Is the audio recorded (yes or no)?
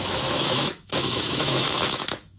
no